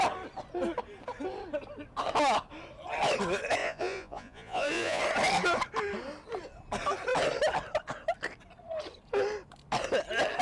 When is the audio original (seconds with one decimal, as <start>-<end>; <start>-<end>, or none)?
0.0-3.6; 5.0-10.4